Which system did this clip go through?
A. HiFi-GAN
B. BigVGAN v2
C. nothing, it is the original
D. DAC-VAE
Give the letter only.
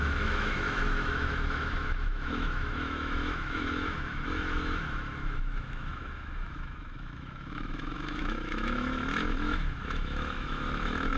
D